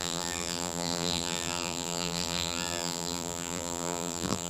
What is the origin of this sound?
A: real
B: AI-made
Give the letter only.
B